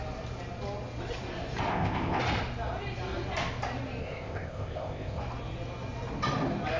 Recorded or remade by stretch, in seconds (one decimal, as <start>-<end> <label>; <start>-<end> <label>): 0.0-1.7 recorded; 1.7-2.2 remade; 2.2-4.0 recorded; 4.0-5.2 remade; 5.2-6.8 recorded